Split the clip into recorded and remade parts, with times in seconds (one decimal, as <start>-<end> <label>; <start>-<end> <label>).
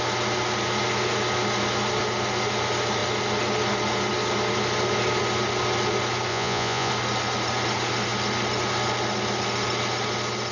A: 0.0-6.3 recorded; 6.3-6.9 remade; 6.9-10.5 recorded